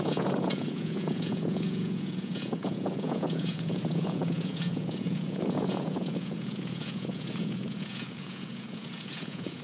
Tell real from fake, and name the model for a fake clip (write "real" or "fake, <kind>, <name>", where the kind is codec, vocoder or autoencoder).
fake, vocoder, Vocos